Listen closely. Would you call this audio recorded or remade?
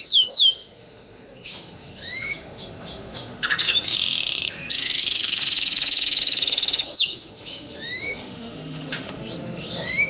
remade